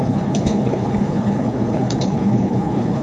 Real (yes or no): no